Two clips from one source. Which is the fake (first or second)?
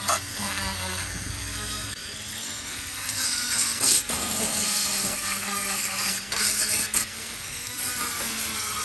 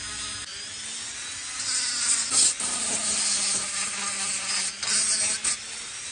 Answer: first